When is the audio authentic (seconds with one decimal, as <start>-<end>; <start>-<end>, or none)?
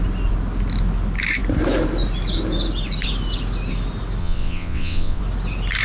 0.0-4.2; 5.2-5.8